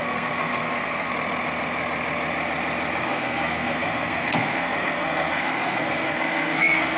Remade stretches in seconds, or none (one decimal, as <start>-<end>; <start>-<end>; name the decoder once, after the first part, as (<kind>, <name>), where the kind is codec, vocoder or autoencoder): 0.0-1.1 (codec, SNAC); 3.0-7.0

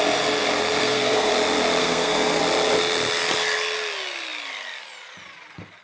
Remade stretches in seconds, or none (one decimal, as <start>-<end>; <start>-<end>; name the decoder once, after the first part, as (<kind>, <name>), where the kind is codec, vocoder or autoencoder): 0.8-1.3 (codec, SNAC); 1.8-2.4

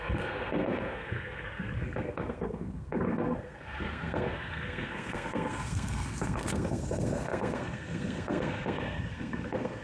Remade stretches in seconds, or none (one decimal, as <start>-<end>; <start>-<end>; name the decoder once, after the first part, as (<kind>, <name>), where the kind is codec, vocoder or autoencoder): 0.0-9.8 (codec, SNAC)

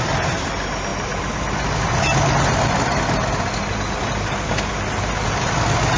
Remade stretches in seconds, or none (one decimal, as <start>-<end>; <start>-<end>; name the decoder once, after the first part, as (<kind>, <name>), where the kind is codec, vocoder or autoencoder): none

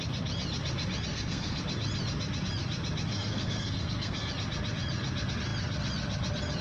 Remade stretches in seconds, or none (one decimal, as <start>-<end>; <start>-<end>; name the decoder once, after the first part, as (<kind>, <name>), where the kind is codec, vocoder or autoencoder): 1.1-1.6 (codec, SNAC); 3.1-4.3

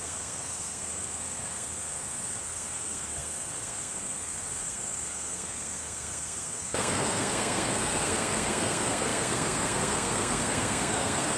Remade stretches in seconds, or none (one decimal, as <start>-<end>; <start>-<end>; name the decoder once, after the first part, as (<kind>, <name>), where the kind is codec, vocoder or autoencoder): 0.0-11.4 (codec, SNAC)

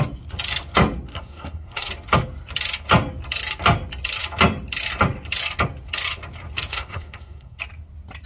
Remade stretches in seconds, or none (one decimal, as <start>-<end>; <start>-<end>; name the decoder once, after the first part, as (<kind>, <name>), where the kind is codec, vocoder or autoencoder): 1.1-1.9 (codec, SNAC); 6.7-7.6